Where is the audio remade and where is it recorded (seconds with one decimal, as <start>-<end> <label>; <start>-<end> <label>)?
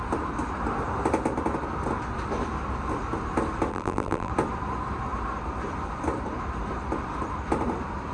0.0-3.7 recorded; 3.7-4.3 remade; 4.3-8.1 recorded